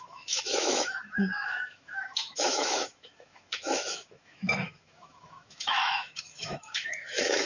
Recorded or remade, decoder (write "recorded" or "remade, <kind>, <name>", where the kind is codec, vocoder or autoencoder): remade, autoencoder, DAC-VAE